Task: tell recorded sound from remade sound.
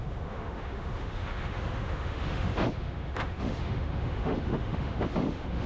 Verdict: remade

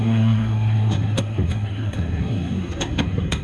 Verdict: remade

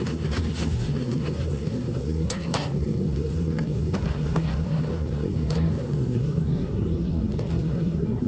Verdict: remade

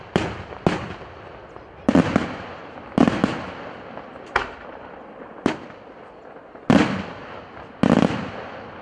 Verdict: recorded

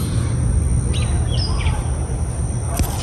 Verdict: recorded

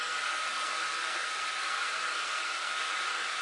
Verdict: remade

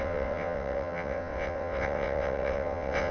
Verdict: remade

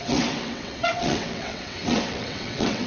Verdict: remade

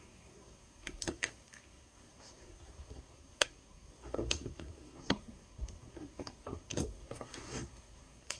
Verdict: remade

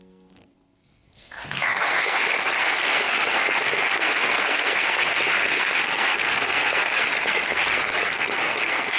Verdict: remade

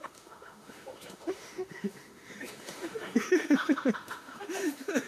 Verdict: remade